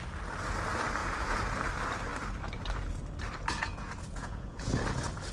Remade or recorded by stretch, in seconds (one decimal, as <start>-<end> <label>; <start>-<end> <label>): 0.0-1.0 recorded; 1.0-1.7 remade; 1.7-3.7 recorded; 3.7-4.7 remade; 4.7-5.3 recorded